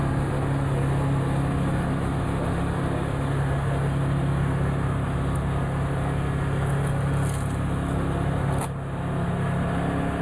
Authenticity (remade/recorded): recorded